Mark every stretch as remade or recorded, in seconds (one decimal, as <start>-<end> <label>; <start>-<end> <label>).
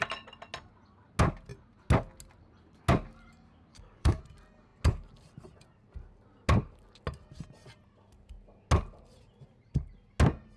0.0-3.7 recorded; 3.7-4.2 remade; 4.2-10.6 recorded